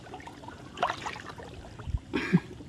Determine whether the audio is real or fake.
real